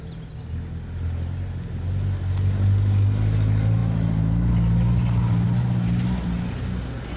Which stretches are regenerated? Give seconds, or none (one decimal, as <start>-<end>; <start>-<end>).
none